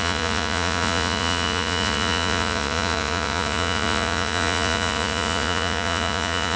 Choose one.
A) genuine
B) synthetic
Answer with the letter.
B